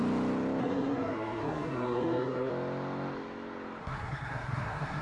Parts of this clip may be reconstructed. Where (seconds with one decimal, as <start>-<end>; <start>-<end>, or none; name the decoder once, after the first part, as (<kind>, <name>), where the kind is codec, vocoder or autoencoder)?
0.6-2.5 (codec, SNAC); 3.8-5.0